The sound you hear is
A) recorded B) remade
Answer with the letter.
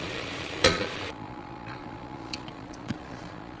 B